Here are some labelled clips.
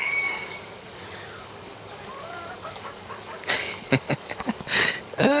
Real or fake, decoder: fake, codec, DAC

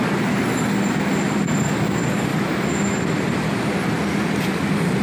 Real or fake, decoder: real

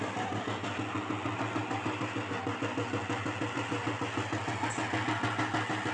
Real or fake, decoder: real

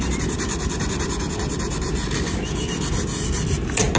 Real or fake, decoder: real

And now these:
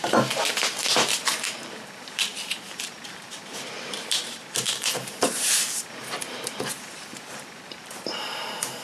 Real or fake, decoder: fake, vocoder, BigVGAN v2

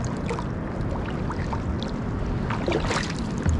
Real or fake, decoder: real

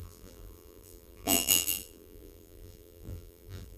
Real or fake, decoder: fake, vocoder, BigVGAN v2